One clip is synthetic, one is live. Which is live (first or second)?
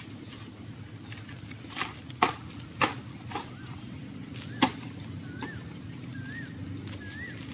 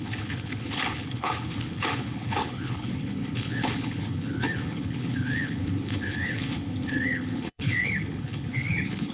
first